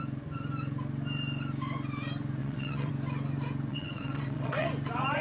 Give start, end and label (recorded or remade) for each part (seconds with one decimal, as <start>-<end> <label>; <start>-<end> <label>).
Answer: 0.0-2.4 recorded; 2.4-2.9 remade; 2.9-3.7 recorded; 3.7-4.7 remade; 4.7-5.2 recorded